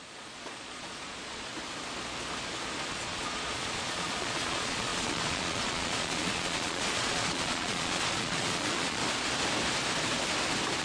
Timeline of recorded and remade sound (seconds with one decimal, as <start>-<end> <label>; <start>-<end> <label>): 0.0-1.5 remade; 1.5-2.9 recorded; 2.9-9.0 remade; 9.0-10.8 recorded